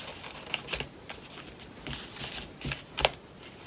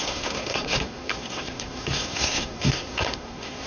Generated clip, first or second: second